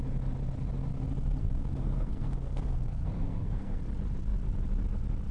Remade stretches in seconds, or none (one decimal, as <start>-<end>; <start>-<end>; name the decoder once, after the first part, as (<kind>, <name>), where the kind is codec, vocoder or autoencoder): 1.4-3.8 (codec, SNAC)